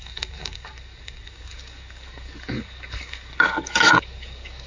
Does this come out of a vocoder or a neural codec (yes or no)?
yes